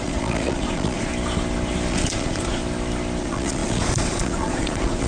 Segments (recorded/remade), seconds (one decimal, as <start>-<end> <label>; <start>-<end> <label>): 0.0-1.1 remade; 1.1-1.9 recorded; 1.9-2.6 remade; 2.6-3.2 recorded; 3.2-5.1 remade